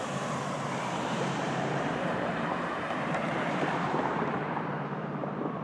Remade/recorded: remade